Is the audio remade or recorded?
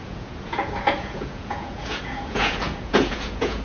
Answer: remade